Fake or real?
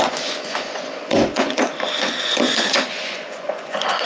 fake